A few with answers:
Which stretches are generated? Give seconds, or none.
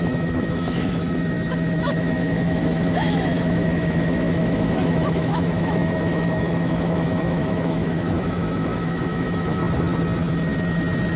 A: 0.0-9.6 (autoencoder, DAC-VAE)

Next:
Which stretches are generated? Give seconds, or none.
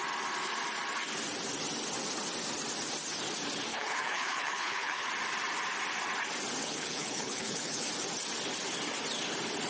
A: 3.7-5.1 (codec, HILCodec); 6.6-7.9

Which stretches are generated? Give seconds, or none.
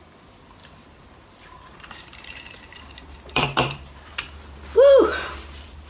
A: 0.6-4.1 (vocoder, BigVGAN v2)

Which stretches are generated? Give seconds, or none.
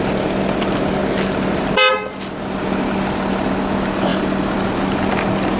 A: none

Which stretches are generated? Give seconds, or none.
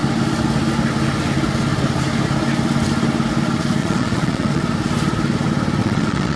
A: 3.8-4.6 (vocoder, Vocos); 5.8-6.4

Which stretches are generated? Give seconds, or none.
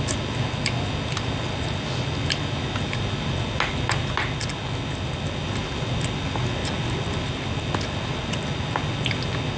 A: none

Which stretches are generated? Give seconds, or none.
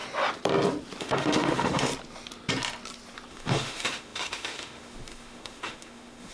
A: 1.0-1.9 (autoencoder, DAC-VAE); 3.3-6.3